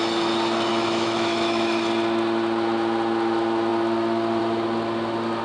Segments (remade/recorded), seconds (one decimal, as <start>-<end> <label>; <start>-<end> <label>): 0.0-0.7 recorded; 0.7-1.8 remade; 1.8-5.4 recorded